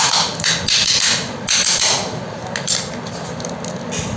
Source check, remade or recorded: recorded